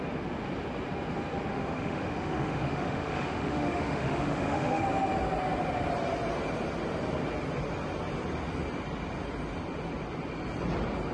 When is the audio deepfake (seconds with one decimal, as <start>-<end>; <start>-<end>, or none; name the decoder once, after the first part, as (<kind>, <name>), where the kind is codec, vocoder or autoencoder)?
1.5-4.8 (autoencoder, DAC-VAE)